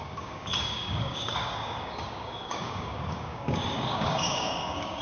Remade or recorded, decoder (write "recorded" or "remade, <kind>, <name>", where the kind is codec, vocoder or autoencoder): remade, codec, DAC